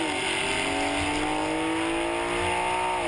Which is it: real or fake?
real